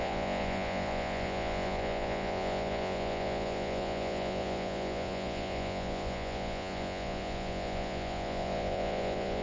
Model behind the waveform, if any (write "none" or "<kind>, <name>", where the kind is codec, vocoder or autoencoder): vocoder, Vocos